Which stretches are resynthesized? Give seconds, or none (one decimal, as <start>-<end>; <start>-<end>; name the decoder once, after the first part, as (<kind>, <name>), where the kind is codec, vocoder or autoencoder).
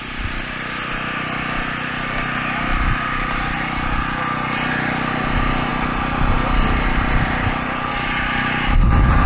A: none